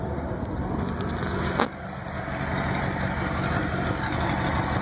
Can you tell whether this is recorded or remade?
recorded